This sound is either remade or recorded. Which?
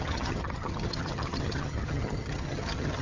remade